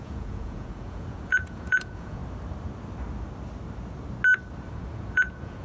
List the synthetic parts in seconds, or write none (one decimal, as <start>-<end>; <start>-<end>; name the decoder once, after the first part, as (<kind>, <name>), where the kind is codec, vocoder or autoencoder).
0.0-2.2 (vocoder, Vocos); 4.7-5.6